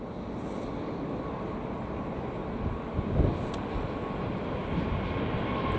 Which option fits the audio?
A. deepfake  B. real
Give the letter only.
B